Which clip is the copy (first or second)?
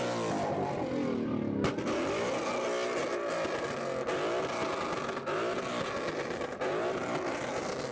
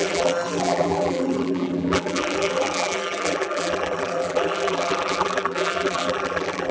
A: second